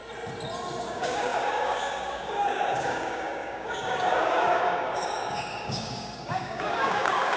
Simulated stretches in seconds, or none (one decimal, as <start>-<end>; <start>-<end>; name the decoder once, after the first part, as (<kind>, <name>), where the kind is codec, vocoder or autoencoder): 0.8-7.4 (codec, DAC)